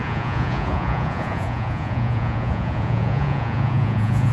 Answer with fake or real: fake